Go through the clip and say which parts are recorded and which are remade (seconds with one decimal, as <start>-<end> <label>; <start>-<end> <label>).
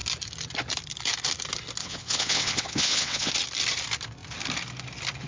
0.0-1.8 recorded; 1.8-3.3 remade; 3.3-5.3 recorded